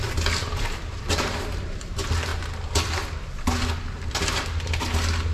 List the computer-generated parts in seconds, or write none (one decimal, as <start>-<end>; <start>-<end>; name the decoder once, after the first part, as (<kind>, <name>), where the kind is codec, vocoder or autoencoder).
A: 0.4-1.8 (vocoder, BigVGAN v2)